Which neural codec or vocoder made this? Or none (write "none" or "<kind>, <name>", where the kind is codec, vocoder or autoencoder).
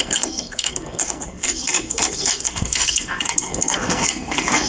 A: codec, SNAC